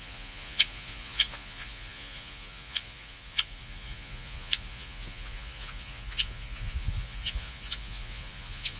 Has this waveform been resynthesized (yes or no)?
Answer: yes